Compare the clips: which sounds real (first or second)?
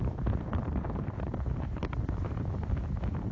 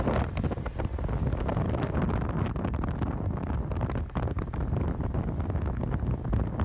second